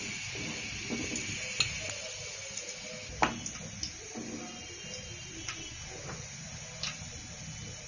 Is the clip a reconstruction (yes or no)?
no